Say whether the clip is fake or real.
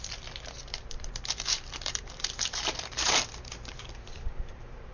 fake